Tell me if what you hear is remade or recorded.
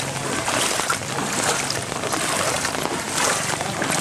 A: remade